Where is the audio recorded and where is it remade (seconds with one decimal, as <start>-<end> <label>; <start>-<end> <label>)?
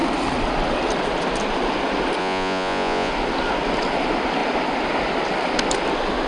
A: 0.0-2.2 recorded; 2.2-3.1 remade; 3.1-6.3 recorded